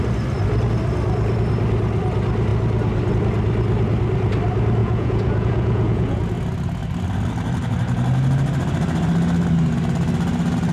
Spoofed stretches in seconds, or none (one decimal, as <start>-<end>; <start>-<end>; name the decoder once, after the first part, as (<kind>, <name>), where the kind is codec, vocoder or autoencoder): 4.8-6.2 (vocoder, Vocos)